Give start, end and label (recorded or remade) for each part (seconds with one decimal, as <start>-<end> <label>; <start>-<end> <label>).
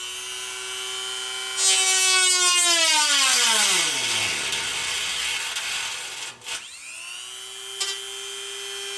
0.0-4.7 recorded; 4.7-5.2 remade; 5.2-9.0 recorded